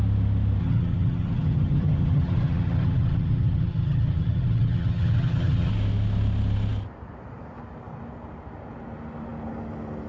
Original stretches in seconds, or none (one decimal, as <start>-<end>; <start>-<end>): 0.0-0.6; 5.7-10.1